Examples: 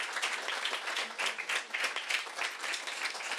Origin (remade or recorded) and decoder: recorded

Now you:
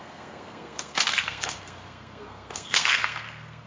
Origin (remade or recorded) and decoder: remade, codec, SNAC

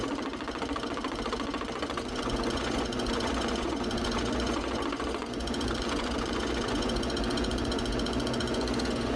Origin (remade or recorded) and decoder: remade, vocoder, Vocos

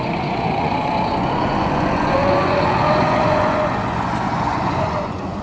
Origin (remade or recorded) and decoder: remade, vocoder, Vocos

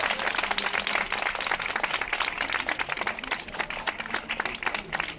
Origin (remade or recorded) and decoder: recorded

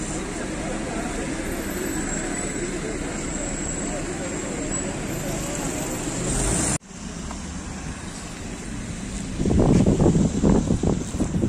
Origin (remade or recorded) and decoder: recorded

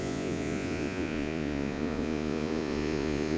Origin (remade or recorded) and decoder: remade, vocoder, Vocos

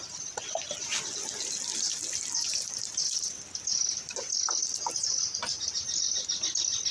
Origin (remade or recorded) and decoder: recorded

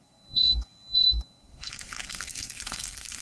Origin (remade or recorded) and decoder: remade, codec, SNAC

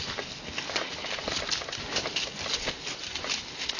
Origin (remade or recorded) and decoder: recorded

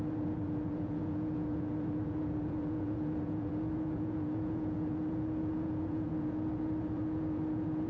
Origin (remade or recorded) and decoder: remade, vocoder, Vocos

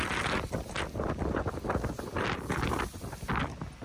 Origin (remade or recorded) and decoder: recorded